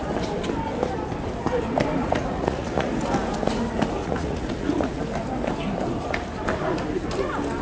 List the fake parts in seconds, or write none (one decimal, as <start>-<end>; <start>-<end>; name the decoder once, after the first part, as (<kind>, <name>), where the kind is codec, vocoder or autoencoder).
2.0-2.9 (vocoder, Vocos); 4.0-5.0